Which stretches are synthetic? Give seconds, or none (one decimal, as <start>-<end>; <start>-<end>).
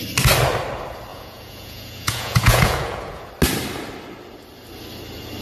1.1-3.3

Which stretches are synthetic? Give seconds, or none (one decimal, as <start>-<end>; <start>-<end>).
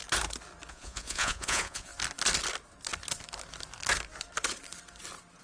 0.7-1.9